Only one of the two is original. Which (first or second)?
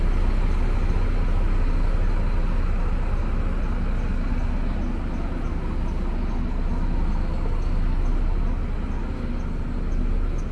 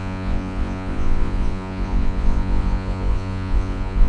first